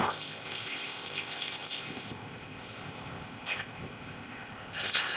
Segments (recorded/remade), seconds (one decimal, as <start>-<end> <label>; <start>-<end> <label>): 0.0-5.2 remade